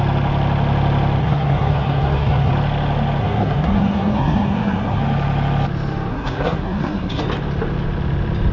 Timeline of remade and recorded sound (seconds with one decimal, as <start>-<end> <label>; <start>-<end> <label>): 0.0-1.2 recorded; 1.2-2.5 remade; 2.5-3.2 recorded; 3.2-5.0 remade; 5.0-6.1 recorded; 6.1-7.2 remade; 7.2-8.5 recorded